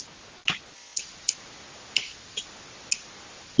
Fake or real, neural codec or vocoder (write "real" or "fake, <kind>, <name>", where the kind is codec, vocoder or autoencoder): real